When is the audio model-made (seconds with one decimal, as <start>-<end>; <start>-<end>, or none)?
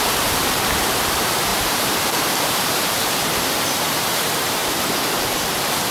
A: 0.0-5.9